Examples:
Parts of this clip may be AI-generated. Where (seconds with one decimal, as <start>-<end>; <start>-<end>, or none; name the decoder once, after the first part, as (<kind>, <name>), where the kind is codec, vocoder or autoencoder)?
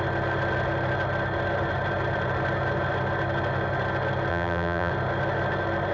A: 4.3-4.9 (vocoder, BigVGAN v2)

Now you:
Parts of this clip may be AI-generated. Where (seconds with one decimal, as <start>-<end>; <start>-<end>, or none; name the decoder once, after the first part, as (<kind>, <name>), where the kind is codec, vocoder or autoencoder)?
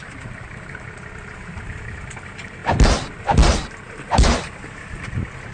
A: 0.0-2.6 (vocoder, BigVGAN v2); 5.1-5.5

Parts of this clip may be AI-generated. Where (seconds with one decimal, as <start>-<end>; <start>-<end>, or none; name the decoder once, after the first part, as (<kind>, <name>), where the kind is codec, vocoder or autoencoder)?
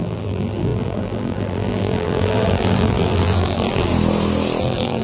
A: 0.0-3.9 (vocoder, BigVGAN v2); 4.6-5.0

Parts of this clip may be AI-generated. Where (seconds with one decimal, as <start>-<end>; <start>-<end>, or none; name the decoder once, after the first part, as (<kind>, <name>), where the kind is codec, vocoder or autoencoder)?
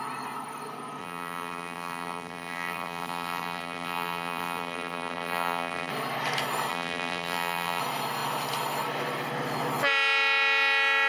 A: 1.0-5.9 (vocoder, BigVGAN v2); 6.7-7.8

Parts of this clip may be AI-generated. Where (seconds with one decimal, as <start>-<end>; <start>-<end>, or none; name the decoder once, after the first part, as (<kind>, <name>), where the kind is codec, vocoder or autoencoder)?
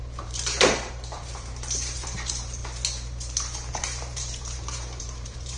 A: 0.0-2.6 (vocoder, BigVGAN v2); 3.7-5.6